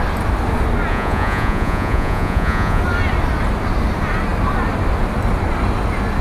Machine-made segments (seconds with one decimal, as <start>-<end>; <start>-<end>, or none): 0.9-2.8